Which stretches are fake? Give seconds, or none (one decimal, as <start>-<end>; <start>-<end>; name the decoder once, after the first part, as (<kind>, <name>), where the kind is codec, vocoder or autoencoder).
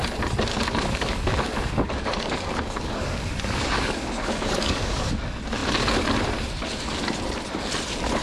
0.5-5.1 (codec, DAC)